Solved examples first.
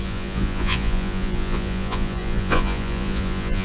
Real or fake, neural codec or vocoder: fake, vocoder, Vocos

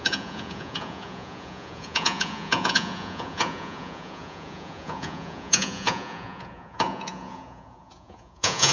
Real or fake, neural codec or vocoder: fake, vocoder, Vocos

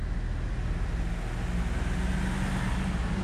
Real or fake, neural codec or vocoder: real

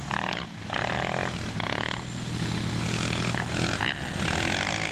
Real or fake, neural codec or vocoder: real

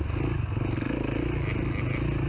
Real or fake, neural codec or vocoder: real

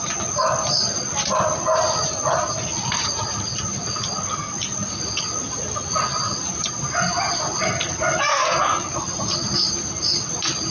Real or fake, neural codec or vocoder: real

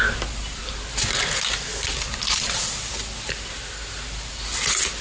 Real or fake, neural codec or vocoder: real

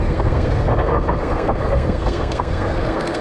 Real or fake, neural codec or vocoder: fake, codec, SNAC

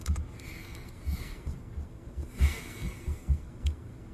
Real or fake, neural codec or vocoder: fake, codec, SNAC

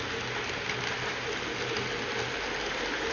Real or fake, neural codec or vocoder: real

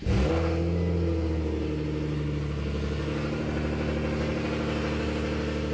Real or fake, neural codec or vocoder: real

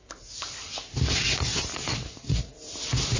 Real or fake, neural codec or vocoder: real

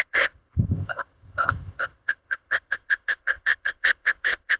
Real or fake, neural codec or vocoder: fake, codec, ZipCodec